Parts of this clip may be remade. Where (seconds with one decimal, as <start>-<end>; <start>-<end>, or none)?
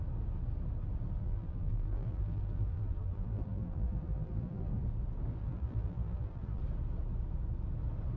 1.2-4.7; 5.4-6.6